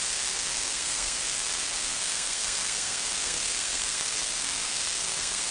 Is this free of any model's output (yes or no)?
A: no